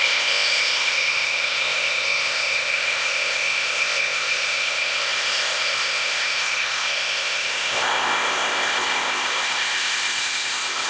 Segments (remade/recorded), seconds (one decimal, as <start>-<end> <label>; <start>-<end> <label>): 0.0-10.9 remade